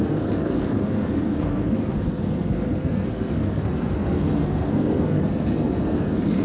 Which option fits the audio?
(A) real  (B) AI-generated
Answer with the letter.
B